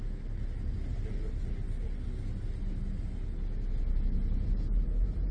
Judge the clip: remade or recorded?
recorded